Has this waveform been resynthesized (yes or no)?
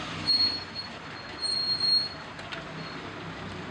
no